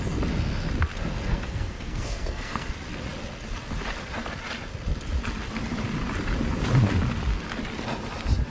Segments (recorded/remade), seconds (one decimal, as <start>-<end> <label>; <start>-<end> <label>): 0.0-1.3 recorded; 1.3-2.7 remade; 2.7-8.5 recorded